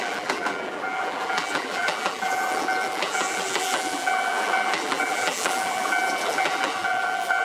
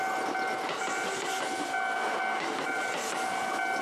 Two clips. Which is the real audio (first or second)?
second